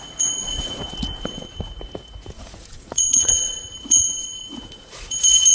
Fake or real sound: fake